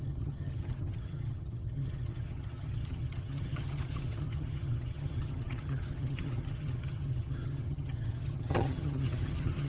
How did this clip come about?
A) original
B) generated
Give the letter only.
B